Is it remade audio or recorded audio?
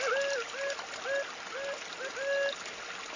recorded